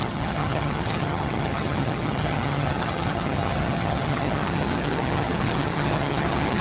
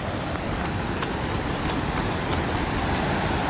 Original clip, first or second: second